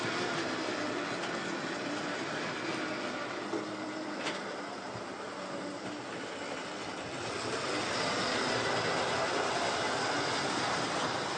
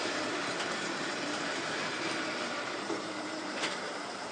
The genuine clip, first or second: first